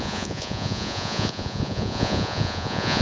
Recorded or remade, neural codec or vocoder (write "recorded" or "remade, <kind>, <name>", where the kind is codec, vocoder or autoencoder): remade, vocoder, Vocos